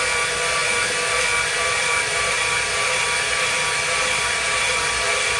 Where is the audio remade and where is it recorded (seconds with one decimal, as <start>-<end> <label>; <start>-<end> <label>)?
0.0-4.7 recorded; 4.7-5.4 remade